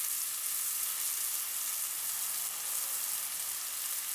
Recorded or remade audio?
recorded